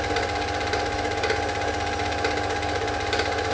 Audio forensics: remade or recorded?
recorded